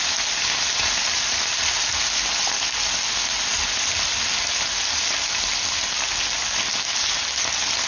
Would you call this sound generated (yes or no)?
no